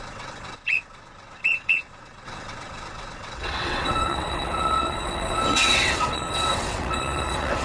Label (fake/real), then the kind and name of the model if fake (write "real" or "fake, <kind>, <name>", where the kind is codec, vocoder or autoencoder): fake, vocoder, WaveNeXt